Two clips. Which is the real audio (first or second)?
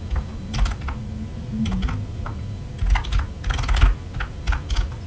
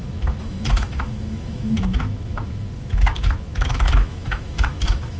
first